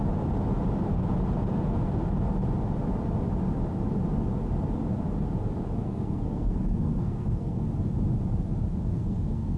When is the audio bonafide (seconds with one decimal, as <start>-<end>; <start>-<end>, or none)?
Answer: 0.0-5.8; 7.7-8.9